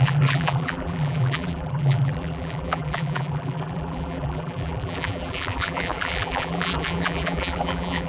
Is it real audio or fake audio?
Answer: fake